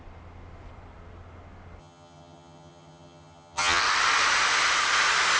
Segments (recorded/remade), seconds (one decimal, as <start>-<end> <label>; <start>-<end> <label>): 0.0-1.8 recorded; 1.8-3.8 remade; 3.8-5.4 recorded